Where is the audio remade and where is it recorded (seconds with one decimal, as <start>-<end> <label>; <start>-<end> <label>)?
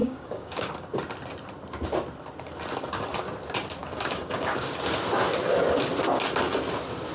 0.0-0.7 remade; 0.7-3.8 recorded; 3.8-4.7 remade; 4.7-7.1 recorded